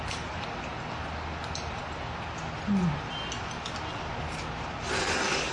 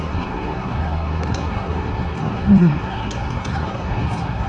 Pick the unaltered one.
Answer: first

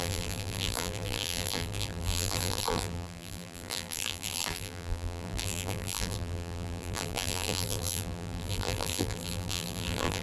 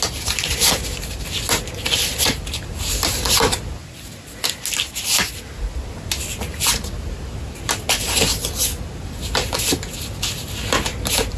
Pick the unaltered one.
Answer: second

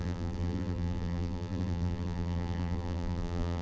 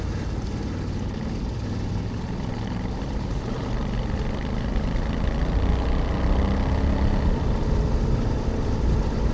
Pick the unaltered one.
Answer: second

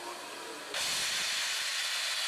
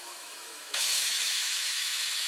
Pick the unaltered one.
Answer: first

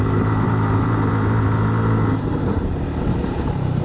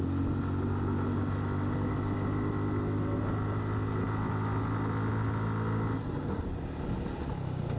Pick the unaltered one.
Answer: second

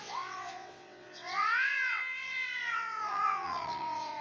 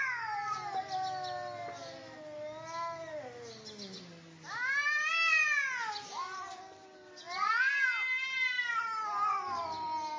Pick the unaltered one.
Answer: second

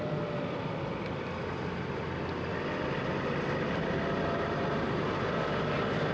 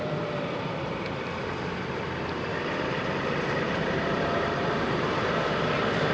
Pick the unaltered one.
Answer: first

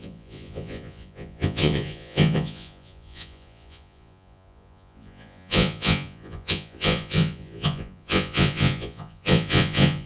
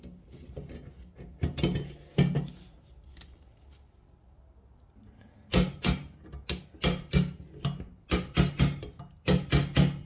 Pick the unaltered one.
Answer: second